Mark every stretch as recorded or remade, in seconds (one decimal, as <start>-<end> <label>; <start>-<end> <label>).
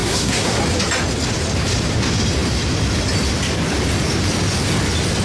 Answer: 0.0-0.6 remade; 0.6-5.2 recorded